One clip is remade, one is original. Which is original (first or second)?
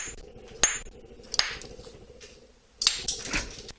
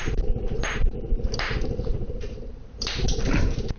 first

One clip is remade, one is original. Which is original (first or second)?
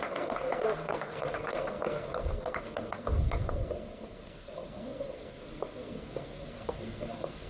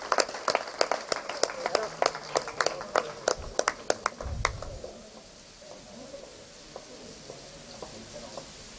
second